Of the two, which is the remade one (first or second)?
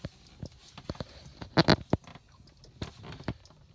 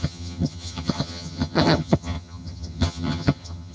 second